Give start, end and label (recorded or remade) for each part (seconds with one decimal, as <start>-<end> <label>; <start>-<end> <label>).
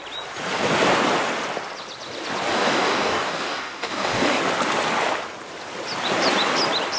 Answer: 0.0-2.5 recorded; 2.5-4.4 remade; 4.4-7.0 recorded